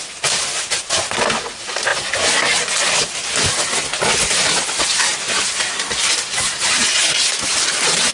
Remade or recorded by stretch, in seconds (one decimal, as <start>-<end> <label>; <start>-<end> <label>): 0.0-8.1 recorded